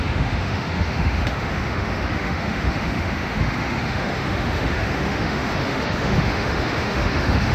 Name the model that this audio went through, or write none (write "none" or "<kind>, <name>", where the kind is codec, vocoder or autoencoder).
autoencoder, DAC-VAE